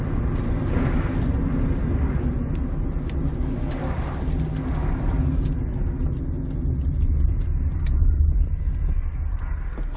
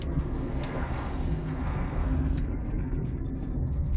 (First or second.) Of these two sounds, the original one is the first